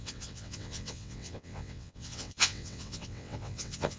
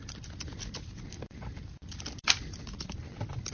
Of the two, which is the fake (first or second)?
first